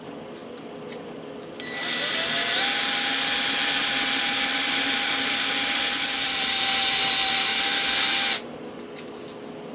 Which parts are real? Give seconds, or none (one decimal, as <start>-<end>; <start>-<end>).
0.0-9.7